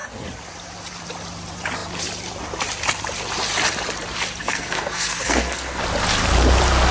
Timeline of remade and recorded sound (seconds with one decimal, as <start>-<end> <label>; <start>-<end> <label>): 0.0-4.4 recorded; 4.4-5.8 remade; 5.8-6.9 recorded